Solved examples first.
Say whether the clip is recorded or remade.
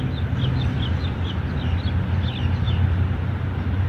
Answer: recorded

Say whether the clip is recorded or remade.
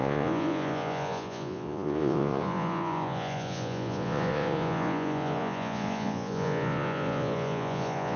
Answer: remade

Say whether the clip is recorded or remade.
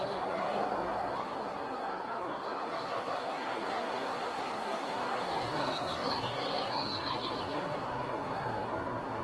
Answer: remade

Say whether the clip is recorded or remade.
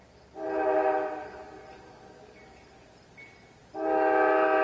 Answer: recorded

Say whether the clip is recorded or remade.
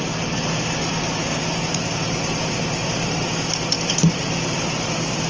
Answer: recorded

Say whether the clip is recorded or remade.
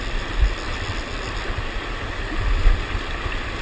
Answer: recorded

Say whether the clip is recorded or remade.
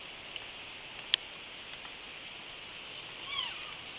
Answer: recorded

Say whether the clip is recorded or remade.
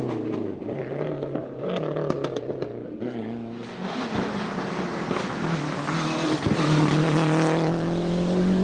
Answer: recorded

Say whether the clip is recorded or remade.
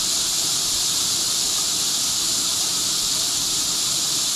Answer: remade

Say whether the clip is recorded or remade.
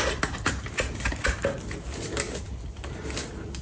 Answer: recorded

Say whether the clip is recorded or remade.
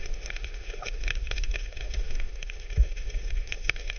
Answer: remade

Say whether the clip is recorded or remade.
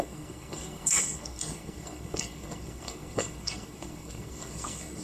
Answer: remade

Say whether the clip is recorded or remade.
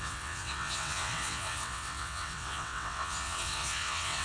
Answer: remade